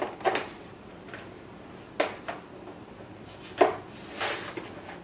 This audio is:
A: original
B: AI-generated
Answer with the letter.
A